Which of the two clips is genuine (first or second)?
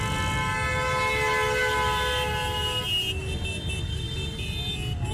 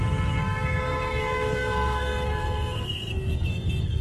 first